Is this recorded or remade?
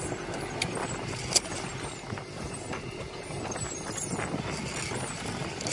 recorded